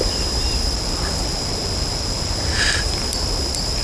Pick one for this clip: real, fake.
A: real